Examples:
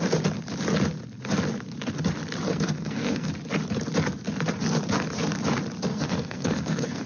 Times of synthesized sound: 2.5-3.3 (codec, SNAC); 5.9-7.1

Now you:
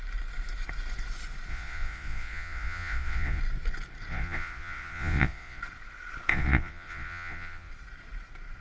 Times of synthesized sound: 1.5-3.4 (vocoder, Vocos); 4.1-5.6; 6.3-7.7